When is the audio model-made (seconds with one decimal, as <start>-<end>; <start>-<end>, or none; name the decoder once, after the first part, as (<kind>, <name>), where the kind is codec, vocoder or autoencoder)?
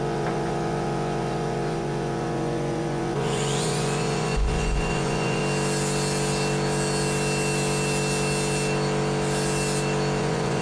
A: 0.0-5.4 (vocoder, Vocos); 10.2-10.6